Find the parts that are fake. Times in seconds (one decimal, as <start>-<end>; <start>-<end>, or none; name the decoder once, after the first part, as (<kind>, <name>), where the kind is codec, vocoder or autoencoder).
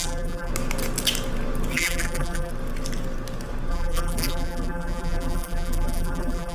0.0-0.5 (vocoder, BigVGAN v2); 1.7-2.5; 3.7-6.5